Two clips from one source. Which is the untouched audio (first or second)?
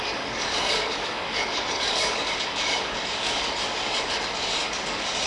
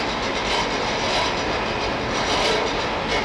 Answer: second